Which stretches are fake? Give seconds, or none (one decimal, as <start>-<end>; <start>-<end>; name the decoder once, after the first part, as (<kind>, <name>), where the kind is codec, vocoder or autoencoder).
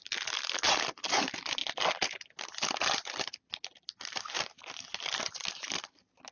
none